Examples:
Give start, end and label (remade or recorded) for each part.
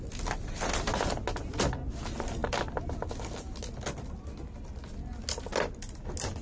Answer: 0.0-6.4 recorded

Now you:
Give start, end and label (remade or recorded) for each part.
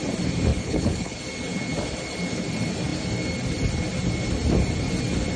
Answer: 0.0-0.5 recorded; 0.5-1.2 remade; 1.2-5.4 recorded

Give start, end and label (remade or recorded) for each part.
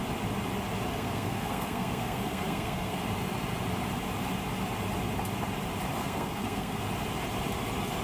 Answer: 0.0-0.9 recorded; 0.9-3.0 remade; 3.0-6.0 recorded; 6.0-6.8 remade; 6.8-8.0 recorded